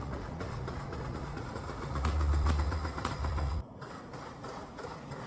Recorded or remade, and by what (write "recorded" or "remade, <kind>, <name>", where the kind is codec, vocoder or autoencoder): remade, vocoder, Vocos